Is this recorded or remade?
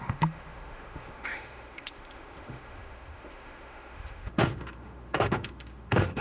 remade